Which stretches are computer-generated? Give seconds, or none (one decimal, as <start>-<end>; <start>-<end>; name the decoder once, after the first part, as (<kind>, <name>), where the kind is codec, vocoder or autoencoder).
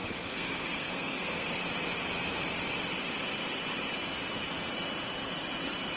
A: 0.0-1.5 (codec, SNAC)